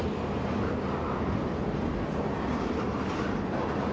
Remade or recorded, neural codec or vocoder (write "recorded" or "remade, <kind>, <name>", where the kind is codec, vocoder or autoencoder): recorded